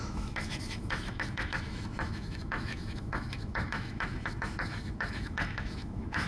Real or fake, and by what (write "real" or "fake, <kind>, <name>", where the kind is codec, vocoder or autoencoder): fake, autoencoder, DAC-VAE